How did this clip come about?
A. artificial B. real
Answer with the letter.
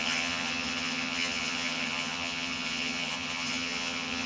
A